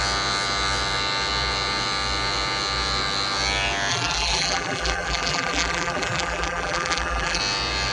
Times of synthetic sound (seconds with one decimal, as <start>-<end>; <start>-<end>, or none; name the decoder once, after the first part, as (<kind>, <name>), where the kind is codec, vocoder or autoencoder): 3.9-7.4 (vocoder, BigVGAN v2)